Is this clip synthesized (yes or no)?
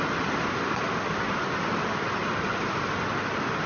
no